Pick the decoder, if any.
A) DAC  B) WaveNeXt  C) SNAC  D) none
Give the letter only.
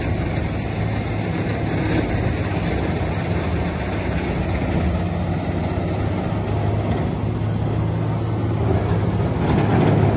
D